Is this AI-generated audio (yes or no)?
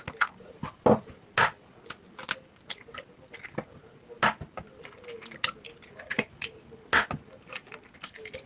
no